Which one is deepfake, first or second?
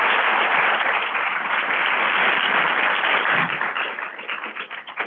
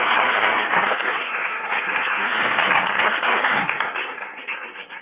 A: second